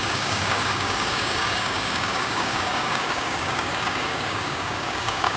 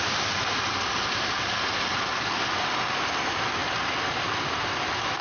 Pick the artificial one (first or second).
first